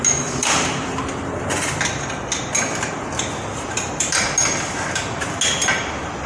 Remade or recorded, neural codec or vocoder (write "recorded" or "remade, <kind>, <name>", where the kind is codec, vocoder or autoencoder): recorded